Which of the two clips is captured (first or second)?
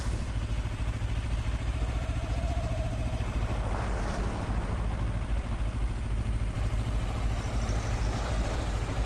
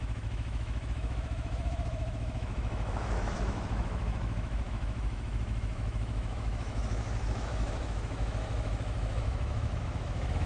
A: first